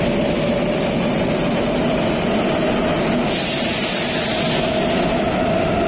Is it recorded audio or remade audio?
recorded